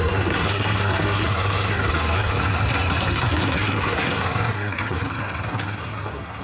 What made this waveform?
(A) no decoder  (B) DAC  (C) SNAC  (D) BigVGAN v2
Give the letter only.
C